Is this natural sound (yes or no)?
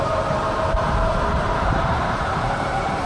no